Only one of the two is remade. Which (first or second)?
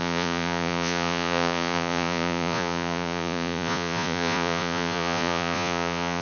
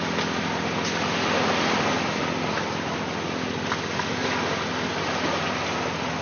first